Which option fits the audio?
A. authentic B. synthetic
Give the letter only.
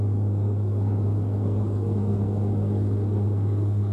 B